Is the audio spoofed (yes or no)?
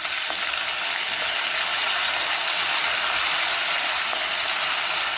no